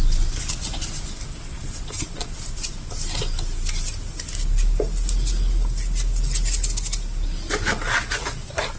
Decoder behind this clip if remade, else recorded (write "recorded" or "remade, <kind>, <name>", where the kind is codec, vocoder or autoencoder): recorded